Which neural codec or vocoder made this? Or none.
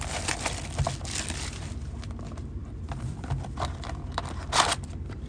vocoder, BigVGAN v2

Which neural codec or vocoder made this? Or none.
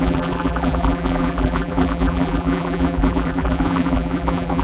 vocoder, BigVGAN v2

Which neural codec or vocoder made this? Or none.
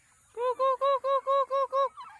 none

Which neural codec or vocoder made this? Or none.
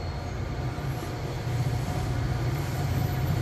vocoder, BigVGAN v2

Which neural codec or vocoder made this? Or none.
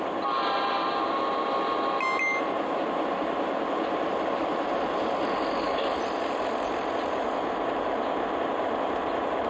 none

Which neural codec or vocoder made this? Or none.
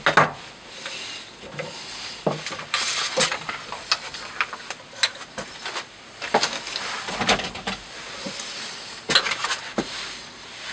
none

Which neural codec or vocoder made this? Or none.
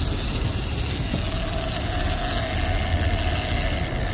none